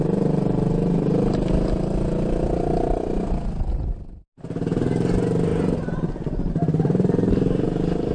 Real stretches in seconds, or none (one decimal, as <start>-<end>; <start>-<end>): 0.0-8.1